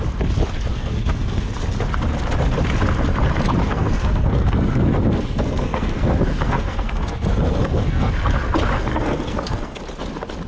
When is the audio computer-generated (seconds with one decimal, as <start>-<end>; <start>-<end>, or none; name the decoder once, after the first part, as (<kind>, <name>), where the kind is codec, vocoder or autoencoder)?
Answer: 0.7-1.4 (codec, SNAC); 3.6-8.1; 8.9-9.8